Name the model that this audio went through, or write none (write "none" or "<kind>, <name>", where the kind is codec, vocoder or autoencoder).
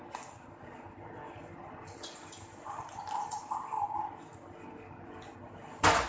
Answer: none